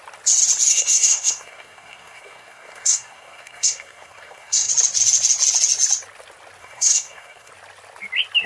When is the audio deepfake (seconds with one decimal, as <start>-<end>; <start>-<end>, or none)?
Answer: 0.7-4.7; 6.6-7.5